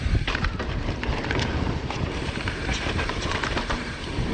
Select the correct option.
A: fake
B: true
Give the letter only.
A